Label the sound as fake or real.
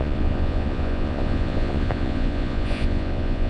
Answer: fake